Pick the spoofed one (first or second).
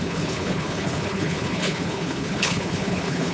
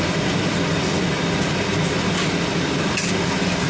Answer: first